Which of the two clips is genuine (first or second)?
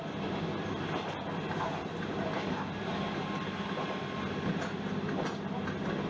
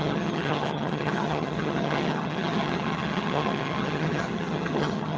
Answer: first